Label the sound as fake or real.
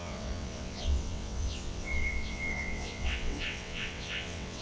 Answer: fake